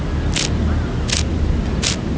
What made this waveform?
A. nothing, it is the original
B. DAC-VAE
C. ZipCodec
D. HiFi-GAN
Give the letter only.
A